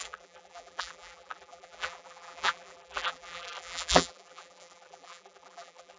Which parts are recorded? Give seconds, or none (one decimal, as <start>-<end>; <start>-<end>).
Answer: none